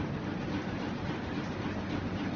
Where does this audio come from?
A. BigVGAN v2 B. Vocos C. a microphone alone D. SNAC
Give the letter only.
C